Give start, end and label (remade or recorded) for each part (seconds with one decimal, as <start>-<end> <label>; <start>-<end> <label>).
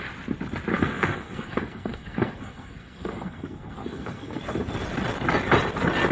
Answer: 0.0-0.7 recorded; 0.7-4.4 remade; 4.4-6.1 recorded